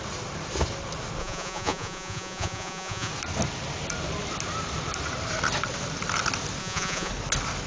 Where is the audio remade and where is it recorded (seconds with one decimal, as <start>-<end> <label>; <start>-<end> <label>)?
0.0-1.2 recorded; 1.2-3.1 remade; 3.1-6.6 recorded; 6.6-7.1 remade; 7.1-7.7 recorded